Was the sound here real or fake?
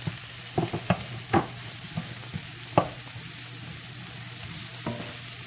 real